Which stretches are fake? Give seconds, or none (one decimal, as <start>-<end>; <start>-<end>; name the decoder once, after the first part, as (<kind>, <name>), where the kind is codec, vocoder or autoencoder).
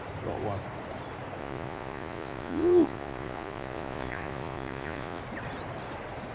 1.4-5.2 (vocoder, Vocos)